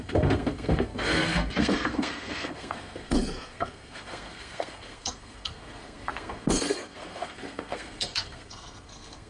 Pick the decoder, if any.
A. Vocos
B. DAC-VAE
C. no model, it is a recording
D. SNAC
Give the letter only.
D